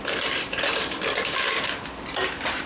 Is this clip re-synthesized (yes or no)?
yes